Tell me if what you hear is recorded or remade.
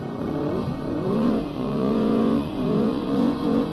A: remade